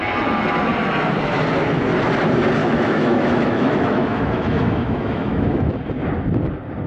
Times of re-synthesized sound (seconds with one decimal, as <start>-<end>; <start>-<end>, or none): 2.6-5.7